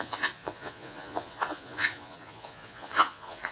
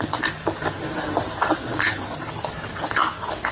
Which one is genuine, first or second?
second